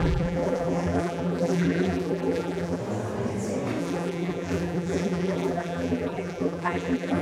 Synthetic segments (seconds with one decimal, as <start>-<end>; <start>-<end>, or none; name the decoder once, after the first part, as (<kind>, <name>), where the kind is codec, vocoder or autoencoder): 0.0-2.8 (vocoder, BigVGAN v2); 3.8-7.2